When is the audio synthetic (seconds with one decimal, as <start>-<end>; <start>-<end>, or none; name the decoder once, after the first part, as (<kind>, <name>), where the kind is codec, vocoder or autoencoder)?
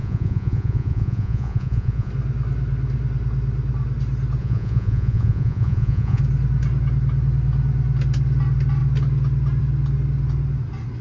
0.0-2.1 (vocoder, Vocos); 4.4-6.2